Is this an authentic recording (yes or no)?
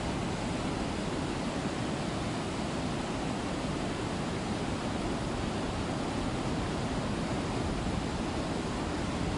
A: yes